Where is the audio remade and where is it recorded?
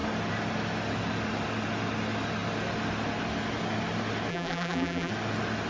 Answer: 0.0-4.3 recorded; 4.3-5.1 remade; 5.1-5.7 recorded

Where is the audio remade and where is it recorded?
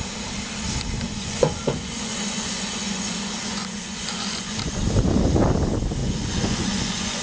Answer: 0.0-1.1 recorded; 1.1-4.8 remade; 4.8-6.0 recorded; 6.0-7.2 remade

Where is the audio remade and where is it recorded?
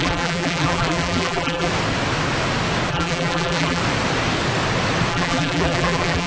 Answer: 0.0-1.7 remade; 1.7-2.9 recorded; 2.9-3.8 remade; 3.8-5.1 recorded; 5.1-6.3 remade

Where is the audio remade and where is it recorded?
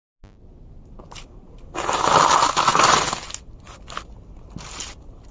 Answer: 0.0-5.3 recorded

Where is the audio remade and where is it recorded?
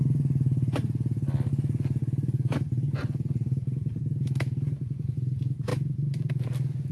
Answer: 0.0-2.0 recorded; 2.0-5.1 remade; 5.1-5.7 recorded; 5.7-6.3 remade; 6.3-6.9 recorded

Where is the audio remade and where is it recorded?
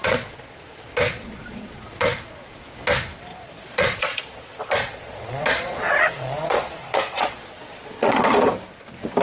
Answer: 0.0-2.5 remade; 2.5-3.3 recorded; 3.3-8.2 remade; 8.2-9.2 recorded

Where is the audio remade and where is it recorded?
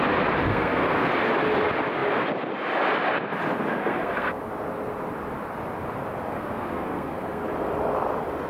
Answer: 0.0-0.5 recorded; 0.5-1.1 remade; 1.1-3.8 recorded; 3.8-4.5 remade; 4.5-6.3 recorded; 6.3-7.4 remade; 7.4-8.5 recorded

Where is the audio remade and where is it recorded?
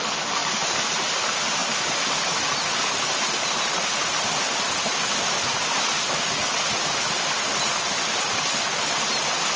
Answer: 0.0-9.6 recorded